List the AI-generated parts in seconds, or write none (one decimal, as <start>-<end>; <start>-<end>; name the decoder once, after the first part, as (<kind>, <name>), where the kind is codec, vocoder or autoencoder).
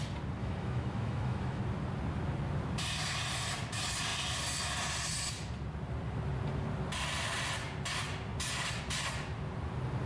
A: 0.4-1.6 (autoencoder, DAC-VAE)